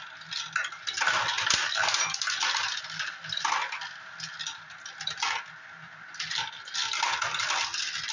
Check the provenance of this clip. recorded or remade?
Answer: recorded